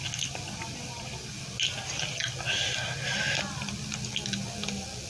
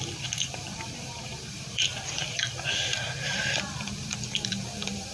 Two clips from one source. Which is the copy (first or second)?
second